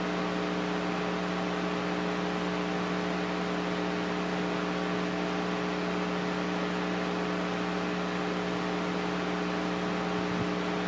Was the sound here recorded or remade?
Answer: recorded